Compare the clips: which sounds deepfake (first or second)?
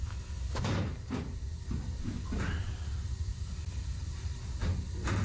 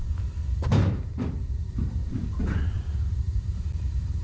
second